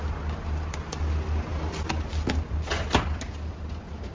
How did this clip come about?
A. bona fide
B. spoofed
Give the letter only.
A